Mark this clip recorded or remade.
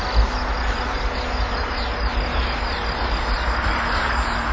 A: recorded